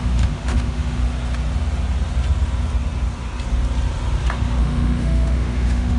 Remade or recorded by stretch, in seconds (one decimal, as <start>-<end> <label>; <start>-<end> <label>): 0.0-1.0 remade; 1.0-4.6 recorded; 4.6-6.0 remade